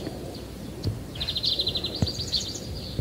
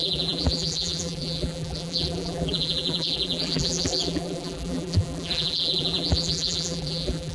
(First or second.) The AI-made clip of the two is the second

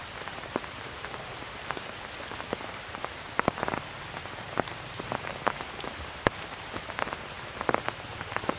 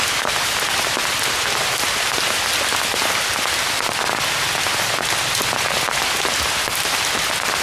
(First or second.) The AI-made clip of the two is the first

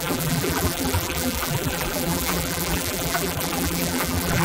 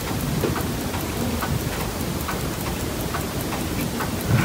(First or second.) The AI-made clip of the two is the first